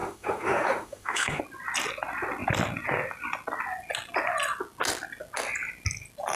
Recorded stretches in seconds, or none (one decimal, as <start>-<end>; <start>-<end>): 1.4-6.4